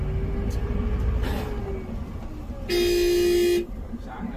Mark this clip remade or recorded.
recorded